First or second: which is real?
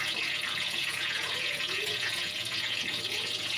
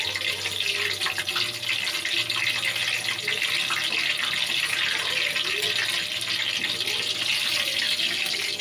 second